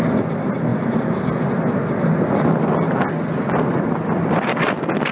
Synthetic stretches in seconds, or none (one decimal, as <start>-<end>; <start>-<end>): none

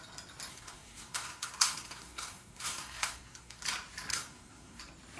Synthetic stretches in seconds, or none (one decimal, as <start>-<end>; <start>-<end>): 0.5-3.6; 4.1-4.8

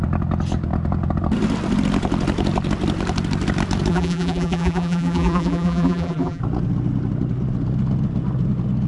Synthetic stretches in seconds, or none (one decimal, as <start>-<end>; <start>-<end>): 3.9-6.4

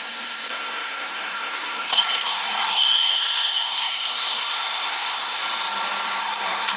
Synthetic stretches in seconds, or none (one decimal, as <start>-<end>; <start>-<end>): 0.0-5.4; 6.2-6.8

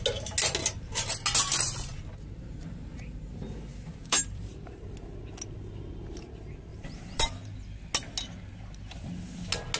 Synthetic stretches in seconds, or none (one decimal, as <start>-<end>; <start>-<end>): 3.7-4.9; 6.7-7.3